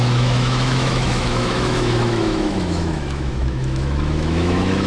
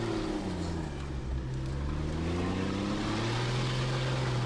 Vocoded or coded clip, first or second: first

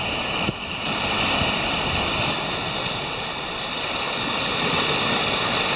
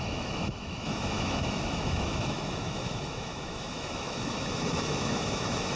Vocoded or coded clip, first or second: second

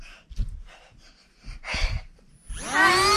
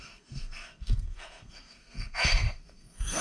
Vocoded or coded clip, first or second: second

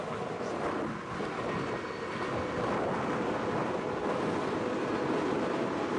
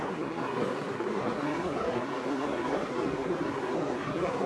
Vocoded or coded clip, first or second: second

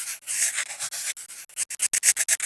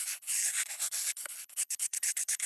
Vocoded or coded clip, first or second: second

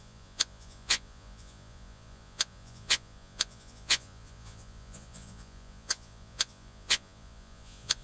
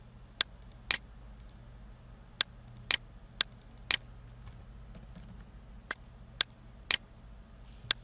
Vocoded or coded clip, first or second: first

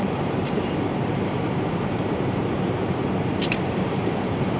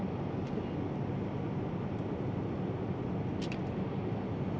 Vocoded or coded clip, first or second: first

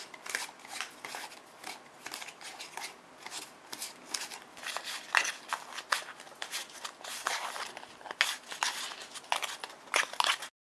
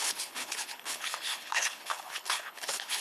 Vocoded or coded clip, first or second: second